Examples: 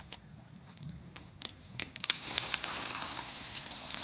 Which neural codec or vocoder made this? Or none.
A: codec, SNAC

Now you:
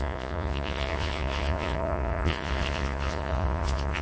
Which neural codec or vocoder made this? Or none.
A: vocoder, Vocos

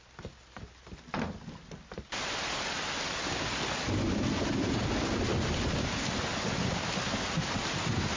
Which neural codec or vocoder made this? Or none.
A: none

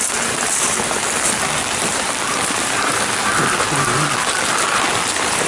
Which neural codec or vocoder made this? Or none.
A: none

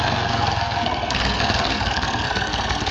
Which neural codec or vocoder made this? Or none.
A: codec, SNAC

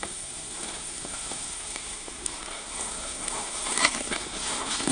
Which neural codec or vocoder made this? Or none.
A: codec, SNAC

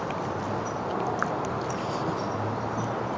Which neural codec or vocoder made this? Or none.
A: none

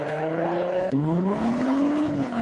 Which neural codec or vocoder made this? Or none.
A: codec, HILCodec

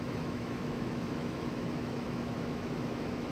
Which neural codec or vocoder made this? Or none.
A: autoencoder, DAC-VAE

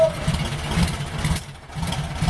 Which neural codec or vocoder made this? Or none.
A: none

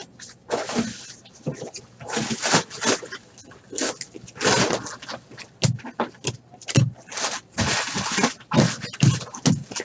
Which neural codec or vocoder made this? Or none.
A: none